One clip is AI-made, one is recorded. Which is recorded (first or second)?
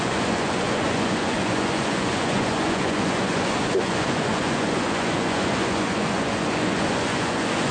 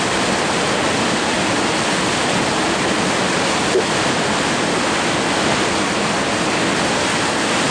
second